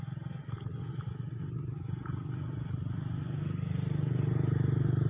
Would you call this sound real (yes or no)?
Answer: yes